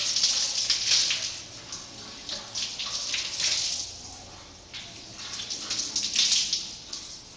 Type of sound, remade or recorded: recorded